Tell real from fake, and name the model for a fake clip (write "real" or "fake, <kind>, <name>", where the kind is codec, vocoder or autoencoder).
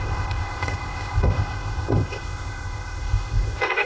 fake, codec, ZipCodec